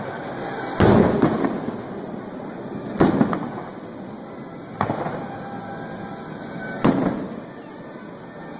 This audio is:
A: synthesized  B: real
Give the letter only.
B